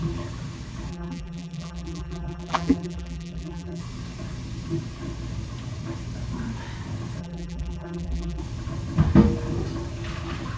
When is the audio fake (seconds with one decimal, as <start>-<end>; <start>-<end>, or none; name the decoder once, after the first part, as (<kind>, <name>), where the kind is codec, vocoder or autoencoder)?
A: 0.9-3.8 (vocoder, BigVGAN v2); 7.2-8.4